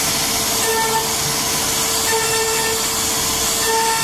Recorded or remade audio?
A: recorded